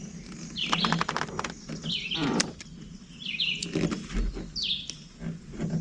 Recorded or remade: recorded